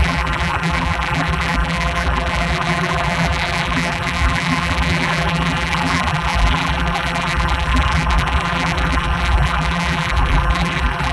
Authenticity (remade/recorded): remade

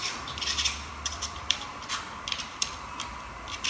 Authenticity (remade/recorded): remade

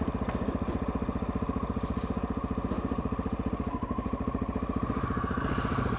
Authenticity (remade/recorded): recorded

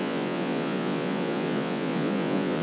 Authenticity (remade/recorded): remade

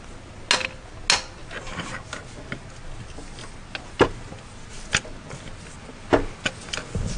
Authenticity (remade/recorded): recorded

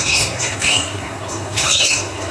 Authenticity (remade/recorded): remade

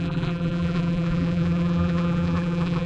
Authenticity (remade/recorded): remade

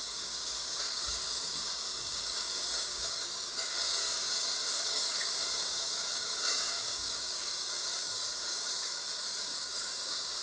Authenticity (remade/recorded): remade